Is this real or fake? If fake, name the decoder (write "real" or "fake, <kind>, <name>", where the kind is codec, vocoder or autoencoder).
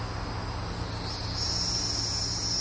real